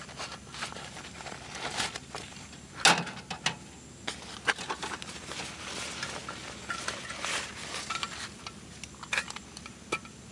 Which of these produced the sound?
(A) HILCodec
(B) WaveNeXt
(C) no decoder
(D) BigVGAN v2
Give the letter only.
C